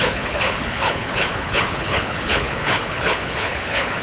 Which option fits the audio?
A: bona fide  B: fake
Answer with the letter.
B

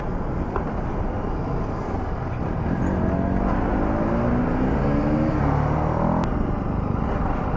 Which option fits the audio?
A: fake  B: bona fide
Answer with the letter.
B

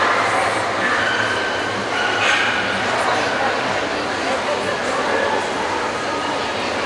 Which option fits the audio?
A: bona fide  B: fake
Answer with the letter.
A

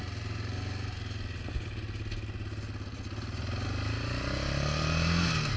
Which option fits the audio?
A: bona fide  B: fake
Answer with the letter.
A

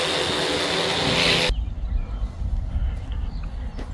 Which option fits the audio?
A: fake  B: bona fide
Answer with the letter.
B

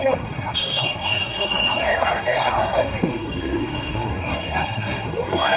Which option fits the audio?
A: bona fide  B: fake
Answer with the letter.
B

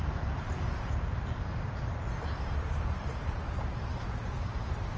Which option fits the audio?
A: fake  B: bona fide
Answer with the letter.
A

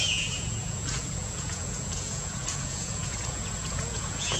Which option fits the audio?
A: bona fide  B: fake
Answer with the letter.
B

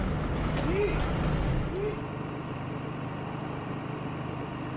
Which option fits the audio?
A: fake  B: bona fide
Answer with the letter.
B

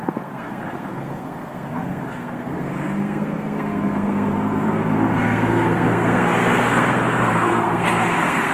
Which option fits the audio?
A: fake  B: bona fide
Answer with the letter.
A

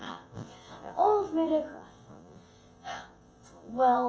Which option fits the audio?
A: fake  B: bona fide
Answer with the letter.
A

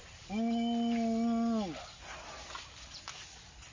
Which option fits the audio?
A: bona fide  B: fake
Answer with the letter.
A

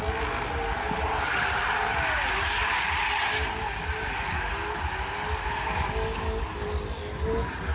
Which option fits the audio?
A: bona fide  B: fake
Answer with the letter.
A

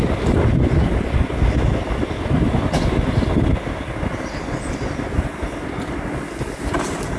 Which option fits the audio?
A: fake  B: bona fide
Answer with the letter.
B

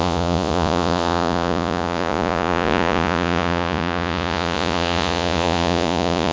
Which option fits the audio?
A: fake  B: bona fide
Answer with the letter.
A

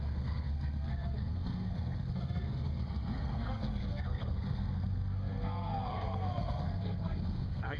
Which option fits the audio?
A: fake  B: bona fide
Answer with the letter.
A